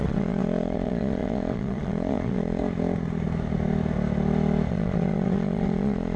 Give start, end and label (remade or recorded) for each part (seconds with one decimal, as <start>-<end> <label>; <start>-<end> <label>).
0.0-2.6 remade; 2.6-4.7 recorded; 4.7-6.2 remade